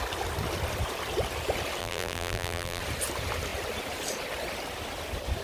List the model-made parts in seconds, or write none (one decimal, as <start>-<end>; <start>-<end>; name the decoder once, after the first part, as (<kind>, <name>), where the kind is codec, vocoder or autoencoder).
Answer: 1.8-2.8 (vocoder, BigVGAN v2)